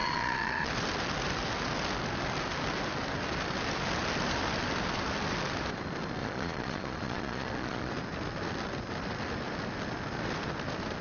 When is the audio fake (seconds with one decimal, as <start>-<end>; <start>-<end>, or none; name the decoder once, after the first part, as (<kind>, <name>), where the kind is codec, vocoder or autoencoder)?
0.0-0.7 (vocoder, Vocos); 6.2-7.9